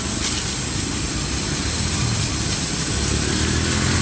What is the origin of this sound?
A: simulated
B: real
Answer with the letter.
B